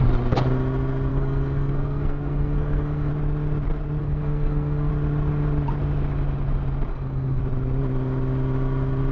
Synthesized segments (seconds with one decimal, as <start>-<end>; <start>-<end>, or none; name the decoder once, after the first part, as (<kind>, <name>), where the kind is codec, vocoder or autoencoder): 1.1-3.1 (codec, SNAC); 4.0-4.9; 6.9-7.4